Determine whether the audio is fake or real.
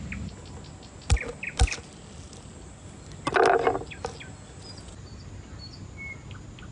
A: real